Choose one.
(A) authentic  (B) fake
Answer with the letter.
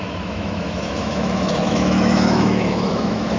B